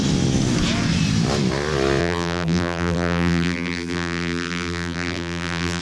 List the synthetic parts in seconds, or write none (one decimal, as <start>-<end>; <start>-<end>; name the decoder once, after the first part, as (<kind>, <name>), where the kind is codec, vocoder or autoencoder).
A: 2.0-5.8 (vocoder, BigVGAN v2)